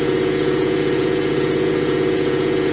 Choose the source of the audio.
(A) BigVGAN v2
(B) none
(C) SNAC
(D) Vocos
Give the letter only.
D